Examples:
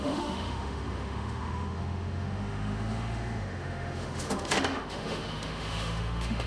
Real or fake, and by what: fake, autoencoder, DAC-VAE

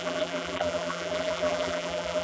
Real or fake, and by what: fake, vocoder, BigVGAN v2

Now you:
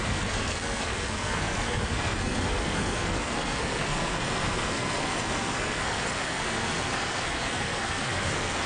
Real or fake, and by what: fake, codec, SNAC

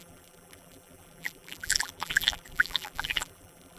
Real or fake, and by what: fake, vocoder, BigVGAN v2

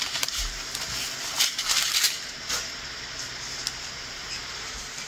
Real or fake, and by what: fake, vocoder, BigVGAN v2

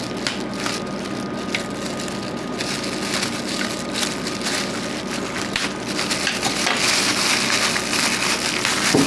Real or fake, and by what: real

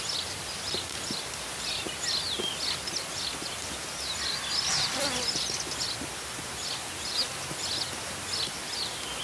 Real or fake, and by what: real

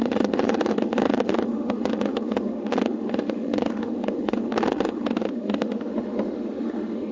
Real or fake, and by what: fake, autoencoder, DAC-VAE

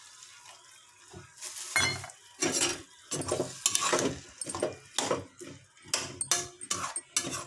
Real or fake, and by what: real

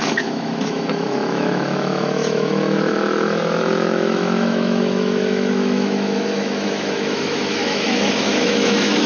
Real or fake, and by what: fake, autoencoder, DAC-VAE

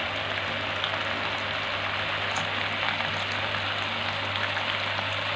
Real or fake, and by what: real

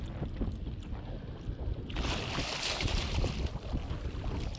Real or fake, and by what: real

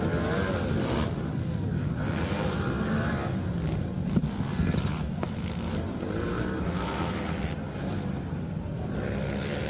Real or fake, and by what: real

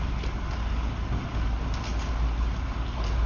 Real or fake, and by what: real